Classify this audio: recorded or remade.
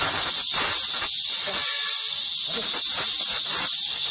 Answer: recorded